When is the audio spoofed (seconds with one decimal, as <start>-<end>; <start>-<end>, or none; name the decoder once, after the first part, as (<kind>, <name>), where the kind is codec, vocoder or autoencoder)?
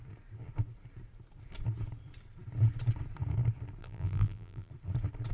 3.8-4.7 (vocoder, BigVGAN v2)